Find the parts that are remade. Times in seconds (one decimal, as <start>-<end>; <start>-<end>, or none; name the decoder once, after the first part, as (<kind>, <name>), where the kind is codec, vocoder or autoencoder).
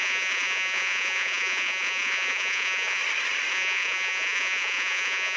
0.0-3.0 (vocoder, Vocos); 3.5-5.4